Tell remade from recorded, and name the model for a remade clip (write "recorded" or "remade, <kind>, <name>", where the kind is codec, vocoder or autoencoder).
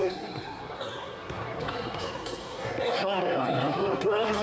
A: remade, codec, SNAC